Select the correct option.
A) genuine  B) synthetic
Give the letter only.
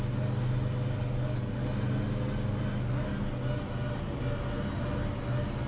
A